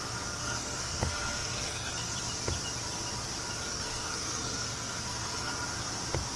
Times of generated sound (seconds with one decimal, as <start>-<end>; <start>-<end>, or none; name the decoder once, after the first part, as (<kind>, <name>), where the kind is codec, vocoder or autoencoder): 0.4-2.1 (codec, SNAC); 3.7-5.5